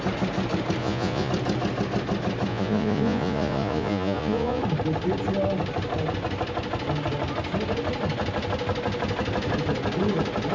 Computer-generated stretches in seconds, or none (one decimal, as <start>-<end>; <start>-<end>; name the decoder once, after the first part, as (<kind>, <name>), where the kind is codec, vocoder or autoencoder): 0.8-1.3 (vocoder, Vocos); 2.5-4.6